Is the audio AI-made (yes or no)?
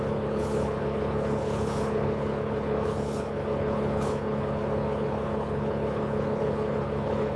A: yes